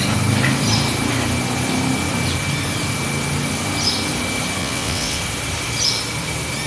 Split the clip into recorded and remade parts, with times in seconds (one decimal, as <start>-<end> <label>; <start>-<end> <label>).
0.0-4.6 recorded; 4.6-5.2 remade; 5.2-6.7 recorded